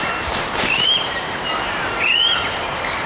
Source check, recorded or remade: remade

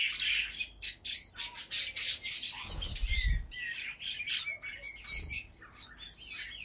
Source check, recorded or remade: recorded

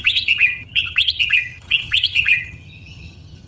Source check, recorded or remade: remade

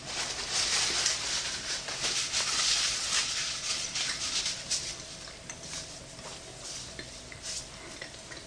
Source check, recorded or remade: recorded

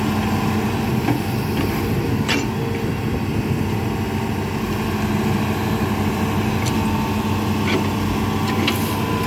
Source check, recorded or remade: recorded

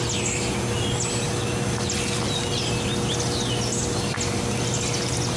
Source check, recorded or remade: recorded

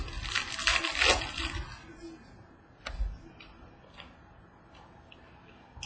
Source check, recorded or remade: recorded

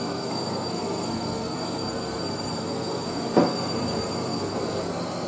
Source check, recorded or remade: remade